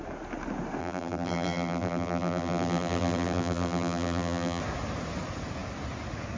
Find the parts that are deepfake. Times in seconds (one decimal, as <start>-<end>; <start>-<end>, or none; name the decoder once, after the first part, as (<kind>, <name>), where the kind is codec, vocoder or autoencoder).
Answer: 0.8-4.6 (vocoder, BigVGAN v2)

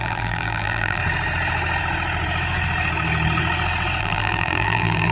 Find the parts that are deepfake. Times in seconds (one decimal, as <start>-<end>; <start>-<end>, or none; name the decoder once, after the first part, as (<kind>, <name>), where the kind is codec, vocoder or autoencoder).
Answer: 0.0-1.0 (vocoder, BigVGAN v2); 4.0-5.1

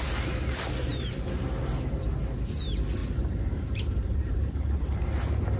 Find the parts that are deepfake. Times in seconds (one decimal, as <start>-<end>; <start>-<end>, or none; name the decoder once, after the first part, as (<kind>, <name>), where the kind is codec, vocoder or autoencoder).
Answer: 0.9-2.1 (vocoder, BigVGAN v2); 3.0-5.6

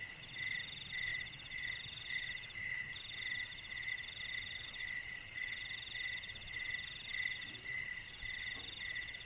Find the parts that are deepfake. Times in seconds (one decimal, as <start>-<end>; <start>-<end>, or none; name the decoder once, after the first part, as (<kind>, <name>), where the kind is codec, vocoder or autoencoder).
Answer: 0.0-1.1 (vocoder, BigVGAN v2); 3.9-9.3

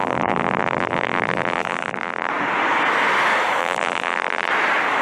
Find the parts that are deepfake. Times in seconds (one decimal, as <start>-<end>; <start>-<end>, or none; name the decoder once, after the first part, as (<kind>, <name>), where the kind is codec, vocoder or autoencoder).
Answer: 0.0-2.3 (vocoder, BigVGAN v2); 3.6-4.5